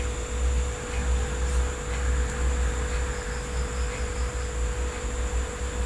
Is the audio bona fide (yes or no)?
yes